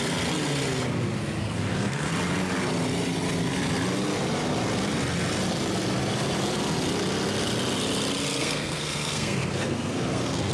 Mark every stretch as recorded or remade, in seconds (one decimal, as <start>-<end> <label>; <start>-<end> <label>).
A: 0.0-1.4 recorded; 1.4-2.1 remade; 2.1-8.4 recorded; 8.4-10.5 remade